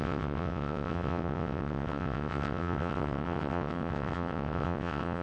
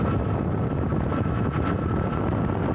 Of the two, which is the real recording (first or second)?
second